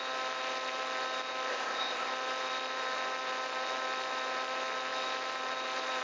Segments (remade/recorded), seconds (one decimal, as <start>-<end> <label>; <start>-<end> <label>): 0.0-1.5 recorded; 1.5-2.1 remade; 2.1-6.0 recorded